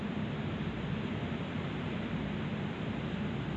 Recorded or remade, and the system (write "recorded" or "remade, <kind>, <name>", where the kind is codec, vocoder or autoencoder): recorded